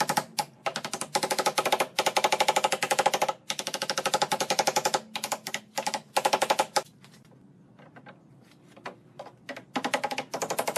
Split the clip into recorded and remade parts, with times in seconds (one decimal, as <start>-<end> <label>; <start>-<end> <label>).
0.0-10.8 recorded